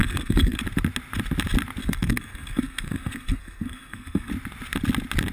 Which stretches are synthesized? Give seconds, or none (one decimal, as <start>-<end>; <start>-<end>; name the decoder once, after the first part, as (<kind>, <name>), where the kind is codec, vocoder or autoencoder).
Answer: 0.0-0.6 (codec, SNAC); 1.8-4.3